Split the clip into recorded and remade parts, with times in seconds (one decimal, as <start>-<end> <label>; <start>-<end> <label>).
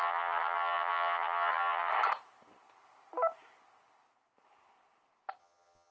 0.0-1.9 remade; 1.9-5.4 recorded; 5.4-5.9 remade